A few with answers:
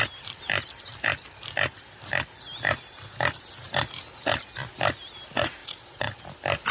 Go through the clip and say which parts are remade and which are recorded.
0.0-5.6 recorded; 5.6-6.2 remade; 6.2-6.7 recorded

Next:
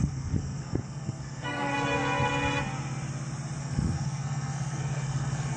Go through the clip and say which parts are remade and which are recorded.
0.0-1.7 remade; 1.7-3.6 recorded; 3.6-5.6 remade